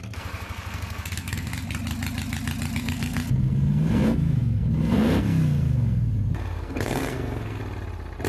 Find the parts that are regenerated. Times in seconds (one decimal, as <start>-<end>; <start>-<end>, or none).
0.0-1.5; 2.8-7.6